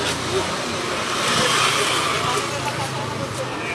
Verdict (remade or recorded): recorded